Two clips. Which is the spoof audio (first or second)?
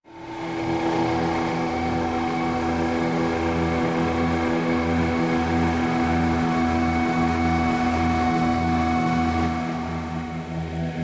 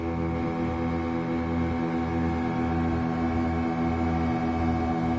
first